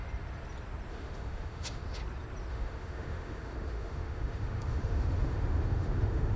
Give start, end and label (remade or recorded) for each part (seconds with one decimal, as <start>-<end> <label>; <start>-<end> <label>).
0.0-0.9 recorded; 0.9-2.0 remade; 2.0-2.5 recorded; 2.5-6.4 remade